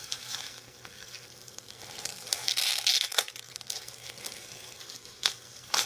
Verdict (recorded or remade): remade